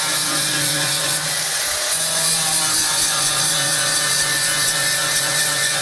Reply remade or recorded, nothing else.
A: remade